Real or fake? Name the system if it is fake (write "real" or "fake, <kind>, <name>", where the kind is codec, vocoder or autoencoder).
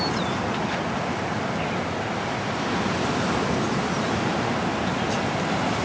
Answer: real